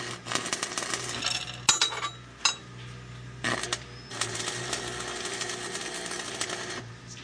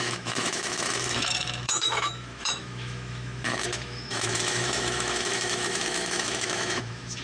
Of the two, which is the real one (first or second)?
first